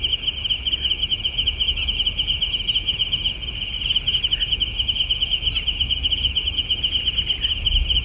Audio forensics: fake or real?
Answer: real